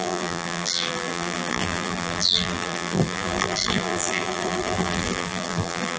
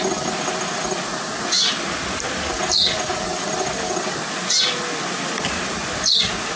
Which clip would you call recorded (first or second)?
second